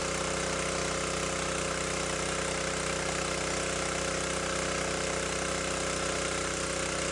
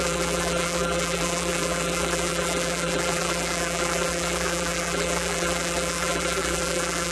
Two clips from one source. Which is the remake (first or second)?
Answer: second